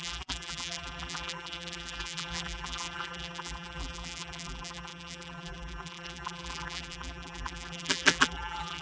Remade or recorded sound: remade